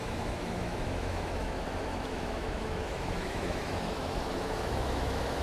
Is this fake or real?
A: fake